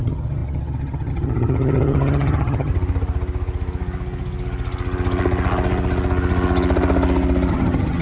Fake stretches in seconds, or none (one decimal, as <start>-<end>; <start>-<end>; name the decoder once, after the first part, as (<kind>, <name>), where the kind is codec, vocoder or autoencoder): 0.0-2.7 (vocoder, HiFi-GAN); 7.5-8.0